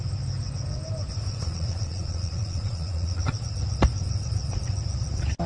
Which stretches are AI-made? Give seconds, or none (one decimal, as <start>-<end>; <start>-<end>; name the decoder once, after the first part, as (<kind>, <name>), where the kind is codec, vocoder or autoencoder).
1.3-3.4 (vocoder, Vocos)